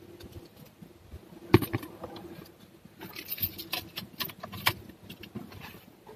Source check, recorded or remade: recorded